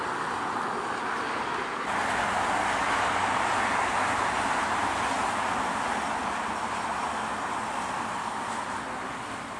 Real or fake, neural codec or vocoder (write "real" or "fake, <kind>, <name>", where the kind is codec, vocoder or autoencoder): real